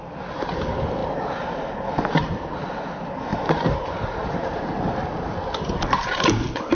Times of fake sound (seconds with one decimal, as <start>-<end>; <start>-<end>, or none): 3.3-4.9